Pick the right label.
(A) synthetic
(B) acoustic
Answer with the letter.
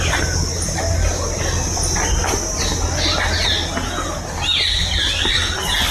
B